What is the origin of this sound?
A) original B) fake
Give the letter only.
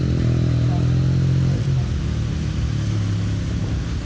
A